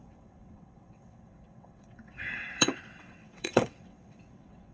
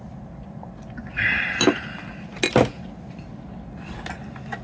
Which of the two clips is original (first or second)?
second